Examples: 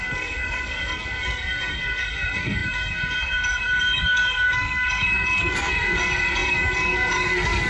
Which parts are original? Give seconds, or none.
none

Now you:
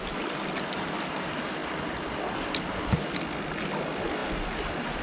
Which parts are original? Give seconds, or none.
0.0-5.0